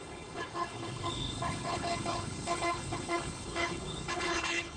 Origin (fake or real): fake